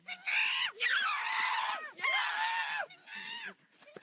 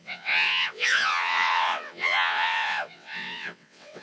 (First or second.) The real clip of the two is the first